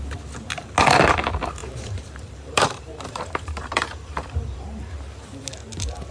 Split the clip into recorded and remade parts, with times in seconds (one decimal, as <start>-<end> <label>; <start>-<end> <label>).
0.0-1.6 recorded; 1.6-4.8 remade; 4.8-6.1 recorded